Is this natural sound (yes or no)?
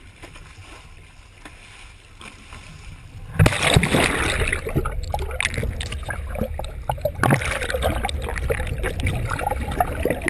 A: yes